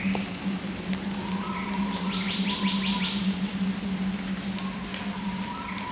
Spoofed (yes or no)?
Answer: no